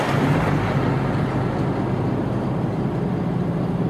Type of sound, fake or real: real